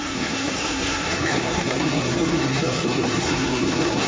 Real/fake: fake